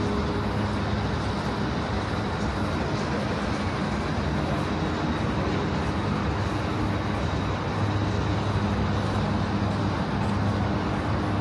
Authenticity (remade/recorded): recorded